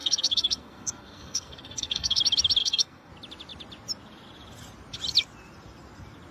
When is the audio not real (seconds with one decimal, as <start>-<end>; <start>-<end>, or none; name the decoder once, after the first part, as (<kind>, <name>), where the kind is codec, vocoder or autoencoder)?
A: 0.0-2.2 (codec, SNAC); 2.6-3.1